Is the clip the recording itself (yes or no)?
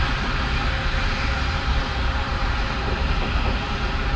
no